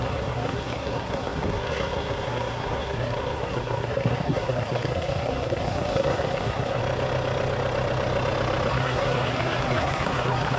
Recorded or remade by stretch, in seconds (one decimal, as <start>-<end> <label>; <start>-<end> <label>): 0.0-6.8 remade; 6.8-8.7 recorded; 8.7-10.6 remade